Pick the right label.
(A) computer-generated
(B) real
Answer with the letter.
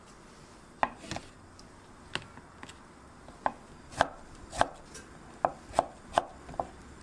B